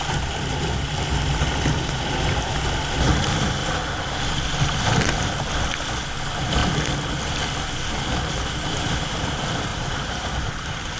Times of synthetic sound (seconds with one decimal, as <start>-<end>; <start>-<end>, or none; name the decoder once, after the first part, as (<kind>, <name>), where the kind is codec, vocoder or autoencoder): 9.7-11.0 (vocoder, BigVGAN v2)